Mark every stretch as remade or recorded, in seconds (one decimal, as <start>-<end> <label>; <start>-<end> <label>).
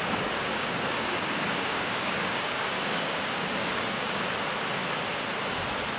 0.0-0.5 recorded; 0.5-4.1 remade; 4.1-6.0 recorded